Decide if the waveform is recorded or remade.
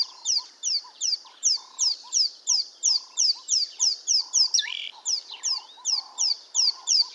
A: remade